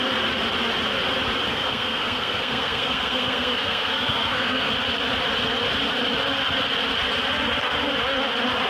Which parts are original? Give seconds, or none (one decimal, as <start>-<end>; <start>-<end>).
0.0-1.5; 4.7-8.7